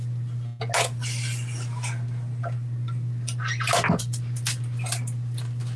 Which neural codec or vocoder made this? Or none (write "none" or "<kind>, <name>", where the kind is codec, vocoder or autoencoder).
none